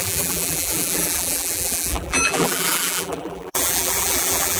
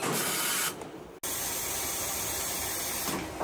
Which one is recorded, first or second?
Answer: second